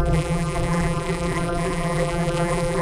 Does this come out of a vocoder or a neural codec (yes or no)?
yes